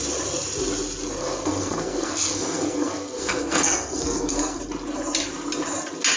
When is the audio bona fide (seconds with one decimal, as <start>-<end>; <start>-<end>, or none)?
0.0-1.2; 4.6-6.2